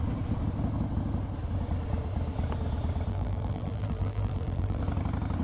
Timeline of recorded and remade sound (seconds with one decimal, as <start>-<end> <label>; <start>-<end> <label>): 0.0-3.1 recorded; 3.1-4.8 remade; 4.8-5.4 recorded